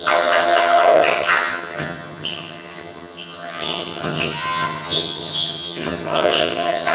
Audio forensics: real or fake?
fake